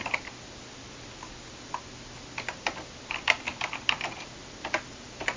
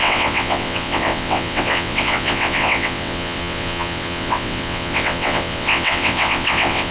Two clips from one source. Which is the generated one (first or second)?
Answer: second